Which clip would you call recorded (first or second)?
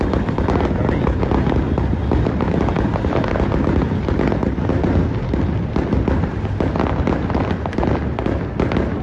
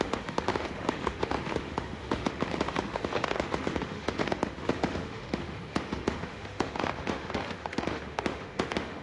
first